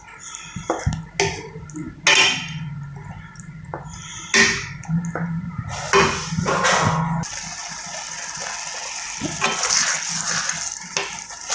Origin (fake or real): real